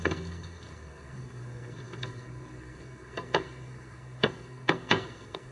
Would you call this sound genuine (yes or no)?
no